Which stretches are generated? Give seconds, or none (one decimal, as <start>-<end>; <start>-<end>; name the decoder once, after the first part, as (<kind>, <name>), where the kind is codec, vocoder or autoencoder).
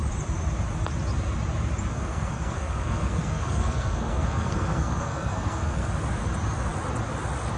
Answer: 1.9-5.9 (codec, SNAC)